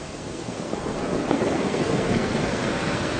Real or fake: fake